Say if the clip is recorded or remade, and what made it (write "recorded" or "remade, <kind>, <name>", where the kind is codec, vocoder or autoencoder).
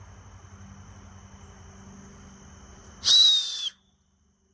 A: recorded